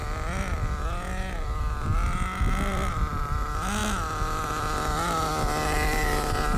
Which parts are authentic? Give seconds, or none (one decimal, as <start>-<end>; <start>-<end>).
0.0-6.6